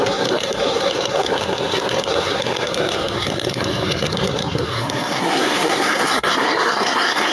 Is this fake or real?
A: fake